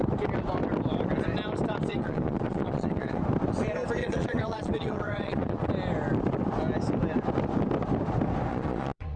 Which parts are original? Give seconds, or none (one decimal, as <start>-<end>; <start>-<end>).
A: 0.0-1.9; 3.2-4.0; 5.7-8.5